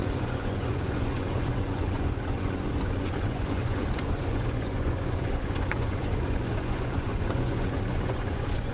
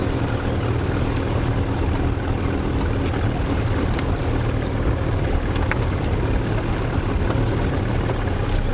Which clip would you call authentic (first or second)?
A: second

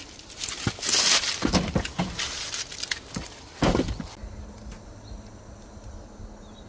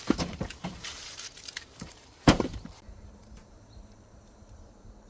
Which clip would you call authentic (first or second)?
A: first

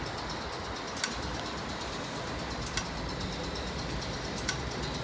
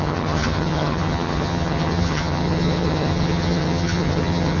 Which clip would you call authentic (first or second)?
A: first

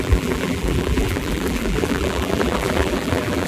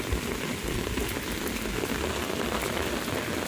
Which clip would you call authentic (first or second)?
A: second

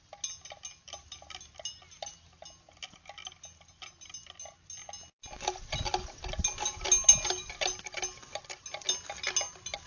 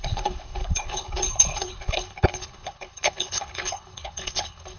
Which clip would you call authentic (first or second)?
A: first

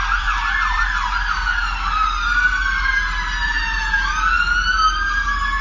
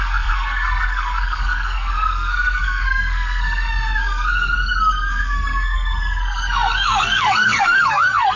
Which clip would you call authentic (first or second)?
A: first